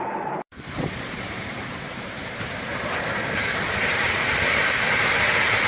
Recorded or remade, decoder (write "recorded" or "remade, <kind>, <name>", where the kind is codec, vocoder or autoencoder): remade, vocoder, BigVGAN v2